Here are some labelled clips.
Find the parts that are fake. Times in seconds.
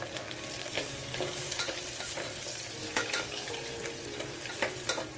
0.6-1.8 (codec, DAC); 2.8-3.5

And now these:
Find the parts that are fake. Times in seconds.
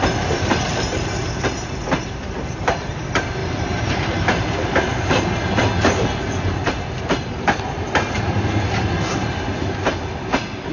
none